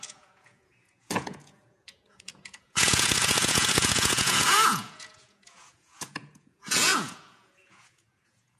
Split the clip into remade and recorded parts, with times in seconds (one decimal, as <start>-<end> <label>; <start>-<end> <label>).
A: 0.0-8.6 remade